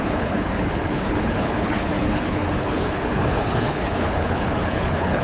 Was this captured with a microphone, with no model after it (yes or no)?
no